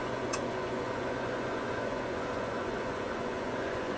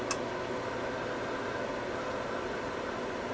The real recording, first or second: second